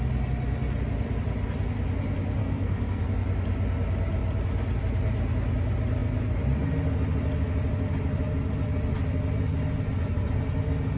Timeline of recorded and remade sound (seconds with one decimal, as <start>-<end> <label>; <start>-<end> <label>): 0.0-2.4 recorded; 2.4-3.0 remade; 3.0-11.0 recorded